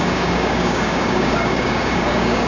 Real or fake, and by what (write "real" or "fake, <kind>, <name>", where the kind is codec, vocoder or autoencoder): fake, codec, DAC